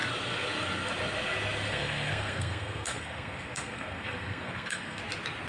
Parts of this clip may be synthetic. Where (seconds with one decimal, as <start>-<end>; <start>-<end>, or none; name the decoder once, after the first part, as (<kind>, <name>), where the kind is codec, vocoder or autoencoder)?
1.7-5.0 (codec, SNAC)